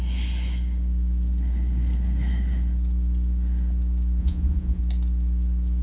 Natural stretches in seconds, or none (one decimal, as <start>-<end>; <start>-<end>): 0.0-4.2; 4.8-5.8